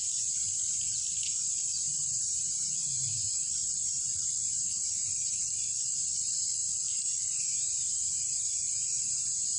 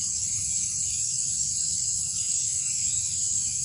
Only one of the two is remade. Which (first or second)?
second